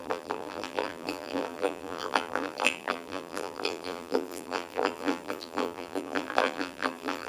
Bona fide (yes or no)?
no